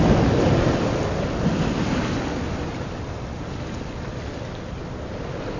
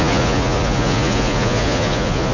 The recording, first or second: first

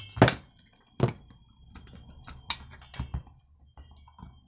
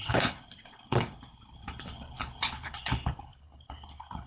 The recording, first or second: first